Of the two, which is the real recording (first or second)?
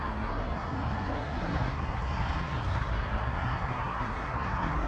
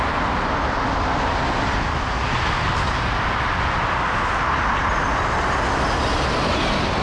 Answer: second